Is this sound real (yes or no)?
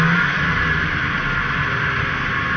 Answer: yes